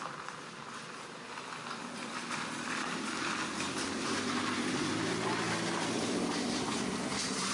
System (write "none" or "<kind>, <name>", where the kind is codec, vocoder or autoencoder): vocoder, BigVGAN v2